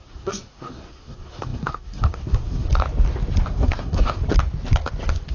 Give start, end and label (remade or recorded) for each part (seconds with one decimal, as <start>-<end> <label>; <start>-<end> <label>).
0.0-2.7 remade; 2.7-3.5 recorded; 3.5-4.2 remade; 4.2-5.3 recorded